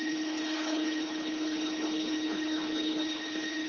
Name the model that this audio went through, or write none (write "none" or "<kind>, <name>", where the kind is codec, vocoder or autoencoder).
codec, HILCodec